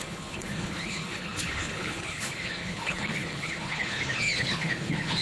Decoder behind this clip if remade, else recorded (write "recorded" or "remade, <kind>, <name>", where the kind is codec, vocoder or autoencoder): remade, codec, HILCodec